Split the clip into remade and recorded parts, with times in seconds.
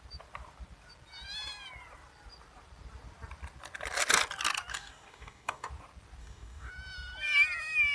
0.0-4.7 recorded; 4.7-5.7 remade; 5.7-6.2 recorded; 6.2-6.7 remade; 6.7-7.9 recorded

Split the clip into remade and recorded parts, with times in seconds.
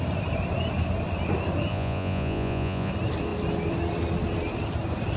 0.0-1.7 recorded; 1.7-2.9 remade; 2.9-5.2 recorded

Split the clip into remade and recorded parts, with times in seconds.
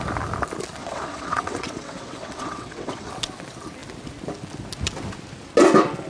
0.0-0.8 recorded; 0.8-3.1 remade; 3.1-6.1 recorded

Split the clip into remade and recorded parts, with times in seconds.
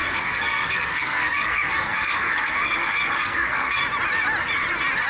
0.0-3.8 remade; 3.8-5.1 recorded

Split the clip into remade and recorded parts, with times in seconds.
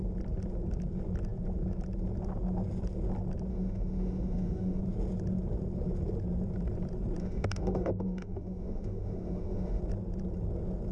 0.0-3.5 recorded; 3.5-4.8 remade; 4.8-7.2 recorded; 7.2-9.8 remade; 9.8-10.9 recorded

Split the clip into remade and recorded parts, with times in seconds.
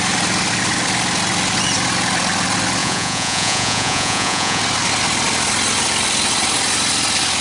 0.0-2.8 recorded; 2.8-4.6 remade; 4.6-7.4 recorded